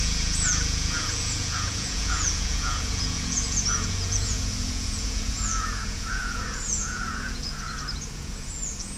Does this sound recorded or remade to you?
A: remade